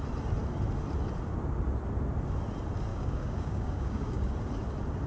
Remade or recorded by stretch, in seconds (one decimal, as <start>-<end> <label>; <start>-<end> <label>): 0.0-2.9 recorded; 2.9-4.3 remade; 4.3-5.1 recorded